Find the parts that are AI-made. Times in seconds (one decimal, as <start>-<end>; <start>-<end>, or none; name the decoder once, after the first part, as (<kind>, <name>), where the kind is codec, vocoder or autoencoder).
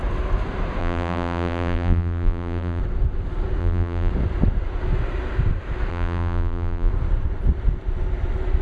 0.8-2.8 (vocoder, BigVGAN v2); 3.6-4.1; 5.9-6.9